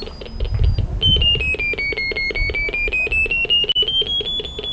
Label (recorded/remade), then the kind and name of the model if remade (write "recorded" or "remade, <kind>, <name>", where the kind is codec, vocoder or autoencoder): recorded